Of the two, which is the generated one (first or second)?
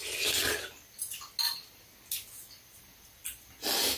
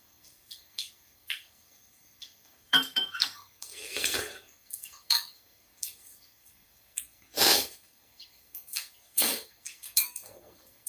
second